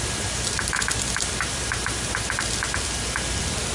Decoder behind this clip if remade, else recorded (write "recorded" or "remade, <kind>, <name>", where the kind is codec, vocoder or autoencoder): recorded